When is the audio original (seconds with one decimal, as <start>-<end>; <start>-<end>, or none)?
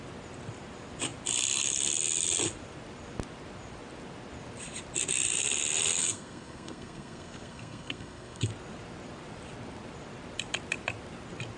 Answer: 0.0-6.0; 8.5-11.6